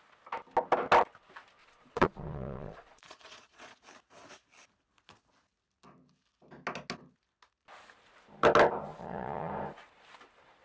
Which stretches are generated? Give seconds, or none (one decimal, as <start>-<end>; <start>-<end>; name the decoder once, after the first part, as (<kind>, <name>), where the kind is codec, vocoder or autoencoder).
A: 1.6-3.8 (vocoder, Vocos); 8.9-9.5